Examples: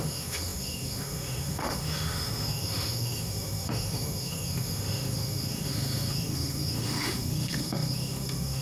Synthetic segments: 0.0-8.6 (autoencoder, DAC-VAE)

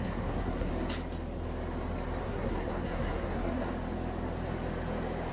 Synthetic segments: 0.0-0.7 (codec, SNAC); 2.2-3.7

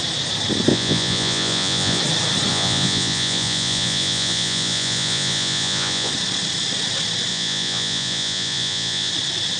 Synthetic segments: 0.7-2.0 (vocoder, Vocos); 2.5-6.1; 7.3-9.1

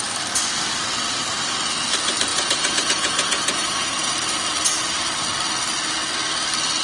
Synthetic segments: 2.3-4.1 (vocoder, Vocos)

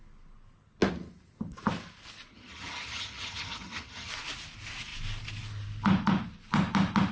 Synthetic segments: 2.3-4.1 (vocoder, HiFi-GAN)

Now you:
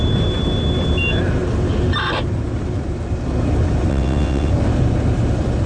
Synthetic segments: 3.9-4.5 (vocoder, WaveNeXt)